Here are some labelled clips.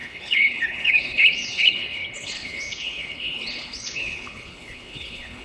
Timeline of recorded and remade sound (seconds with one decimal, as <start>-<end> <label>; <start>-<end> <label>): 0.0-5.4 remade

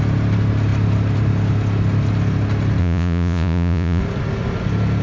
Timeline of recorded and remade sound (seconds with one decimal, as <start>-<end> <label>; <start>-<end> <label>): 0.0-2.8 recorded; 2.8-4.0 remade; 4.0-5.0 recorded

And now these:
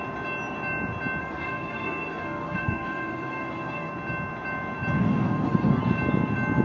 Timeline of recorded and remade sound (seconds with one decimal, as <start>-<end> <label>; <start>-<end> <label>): 0.0-1.2 recorded; 1.2-3.9 remade; 3.9-5.0 recorded; 5.0-5.8 remade; 5.8-6.6 recorded

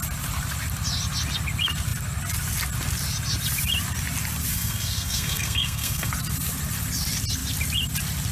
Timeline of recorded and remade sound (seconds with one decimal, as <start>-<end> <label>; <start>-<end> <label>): 0.0-4.5 recorded; 4.5-6.1 remade; 6.1-8.3 recorded

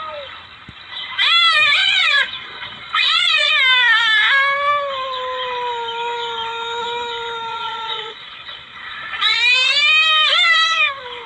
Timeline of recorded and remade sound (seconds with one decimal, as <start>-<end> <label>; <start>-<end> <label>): 0.0-1.8 recorded; 1.8-3.5 remade; 3.5-7.5 recorded; 7.5-9.4 remade; 9.4-11.3 recorded

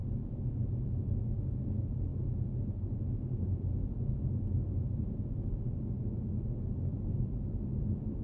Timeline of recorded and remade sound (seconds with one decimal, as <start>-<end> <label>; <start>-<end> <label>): 0.0-0.8 recorded; 0.8-8.2 remade

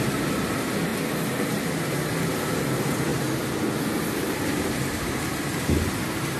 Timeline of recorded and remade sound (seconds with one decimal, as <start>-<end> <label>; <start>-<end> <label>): 0.0-0.9 remade; 0.9-1.5 recorded; 1.5-3.1 remade; 3.1-4.3 recorded; 4.3-6.4 remade

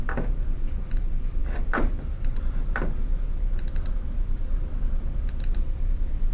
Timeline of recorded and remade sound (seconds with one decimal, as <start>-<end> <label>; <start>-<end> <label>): 0.0-6.3 recorded